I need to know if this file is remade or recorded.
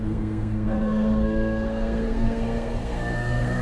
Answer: remade